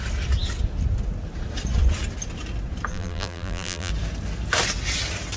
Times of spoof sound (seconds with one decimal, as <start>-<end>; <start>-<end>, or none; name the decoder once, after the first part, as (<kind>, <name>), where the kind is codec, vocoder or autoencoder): 2.9-3.9 (vocoder, BigVGAN v2)